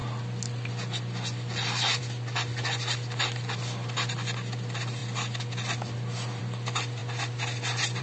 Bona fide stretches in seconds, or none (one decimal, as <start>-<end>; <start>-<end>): 0.0-8.0